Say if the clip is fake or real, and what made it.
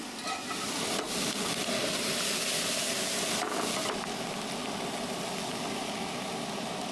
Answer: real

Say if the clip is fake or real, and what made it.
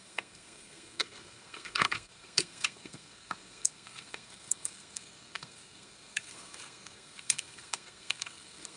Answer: fake, codec, SNAC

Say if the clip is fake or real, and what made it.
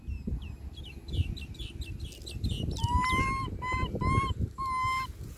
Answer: real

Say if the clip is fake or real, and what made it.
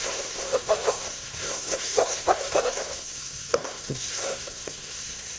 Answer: fake, codec, SNAC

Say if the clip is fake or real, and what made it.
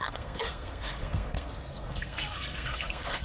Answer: fake, codec, SNAC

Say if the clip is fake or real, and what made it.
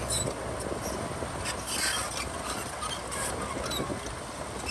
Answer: real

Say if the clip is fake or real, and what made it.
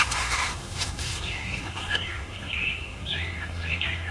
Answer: fake, codec, SNAC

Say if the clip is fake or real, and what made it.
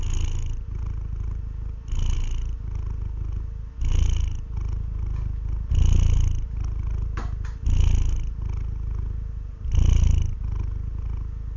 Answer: real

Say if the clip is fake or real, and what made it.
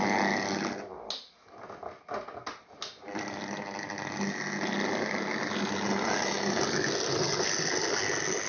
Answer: real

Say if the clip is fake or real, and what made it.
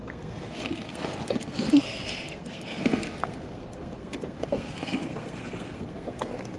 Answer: fake, codec, SNAC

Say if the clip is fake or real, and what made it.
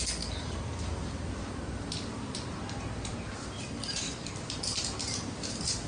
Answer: real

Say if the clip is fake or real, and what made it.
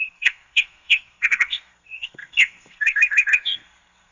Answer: fake, codec, SNAC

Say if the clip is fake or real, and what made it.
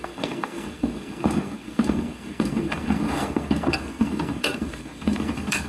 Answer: fake, codec, SNAC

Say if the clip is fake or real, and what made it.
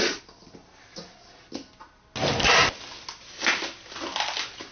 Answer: real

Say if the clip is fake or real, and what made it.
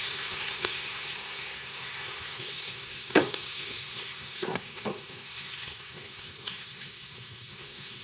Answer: fake, codec, SNAC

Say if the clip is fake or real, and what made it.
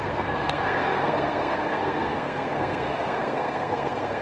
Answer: fake, codec, SNAC